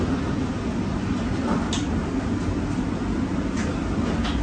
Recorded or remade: recorded